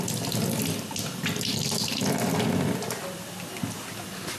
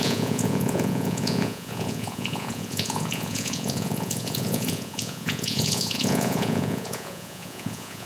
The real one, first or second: first